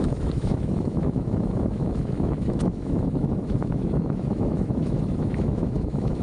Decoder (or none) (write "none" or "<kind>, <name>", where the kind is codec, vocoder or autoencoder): autoencoder, DAC-VAE